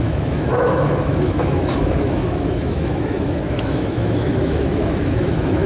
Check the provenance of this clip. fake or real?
fake